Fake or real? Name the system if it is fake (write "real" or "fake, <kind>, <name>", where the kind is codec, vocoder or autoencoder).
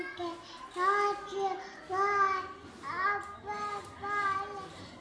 real